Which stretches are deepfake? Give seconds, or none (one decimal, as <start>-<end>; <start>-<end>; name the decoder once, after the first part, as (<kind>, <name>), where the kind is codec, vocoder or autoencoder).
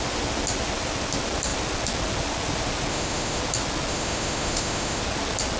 2.9-3.4 (autoencoder, DAC-VAE); 3.9-5.0